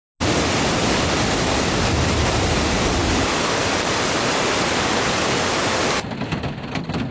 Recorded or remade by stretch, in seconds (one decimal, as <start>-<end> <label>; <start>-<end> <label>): 0.0-3.6 recorded; 3.6-5.7 remade; 5.7-7.1 recorded